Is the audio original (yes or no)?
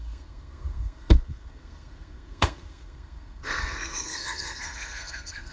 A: no